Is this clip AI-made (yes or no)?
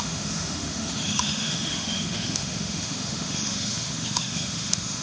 yes